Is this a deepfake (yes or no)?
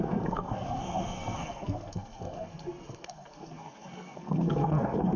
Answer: yes